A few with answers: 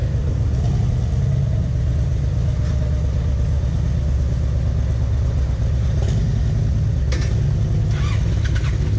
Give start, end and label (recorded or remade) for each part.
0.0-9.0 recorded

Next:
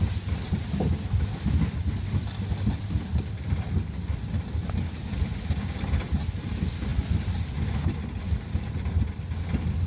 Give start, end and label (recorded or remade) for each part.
0.0-9.9 recorded

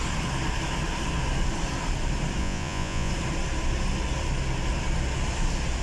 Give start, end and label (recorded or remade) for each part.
0.0-2.4 recorded; 2.4-3.1 remade; 3.1-5.8 recorded